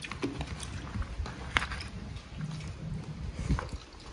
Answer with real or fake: real